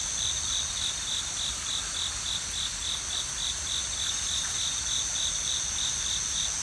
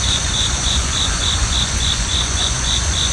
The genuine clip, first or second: first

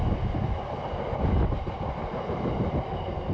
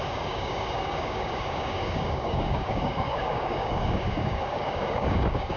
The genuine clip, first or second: first